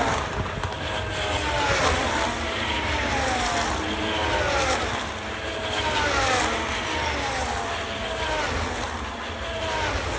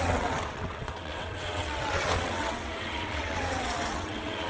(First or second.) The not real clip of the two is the second